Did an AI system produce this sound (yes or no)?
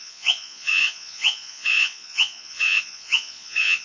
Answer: yes